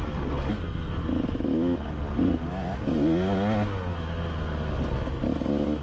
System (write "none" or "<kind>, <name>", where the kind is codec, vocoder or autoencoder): none